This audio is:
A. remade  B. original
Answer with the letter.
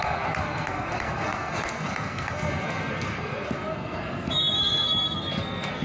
A